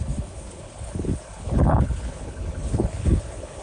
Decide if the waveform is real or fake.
fake